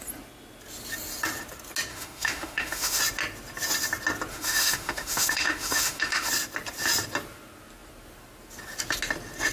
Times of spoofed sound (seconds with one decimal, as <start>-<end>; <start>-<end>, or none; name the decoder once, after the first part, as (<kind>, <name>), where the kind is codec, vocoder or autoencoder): 1.9-3.0 (autoencoder, DAC-VAE); 4.3-6.3